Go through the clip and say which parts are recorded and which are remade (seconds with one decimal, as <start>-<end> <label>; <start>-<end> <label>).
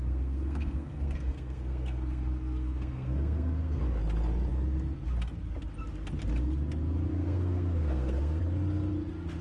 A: 0.0-3.8 remade; 3.8-7.1 recorded; 7.1-8.4 remade; 8.4-9.4 recorded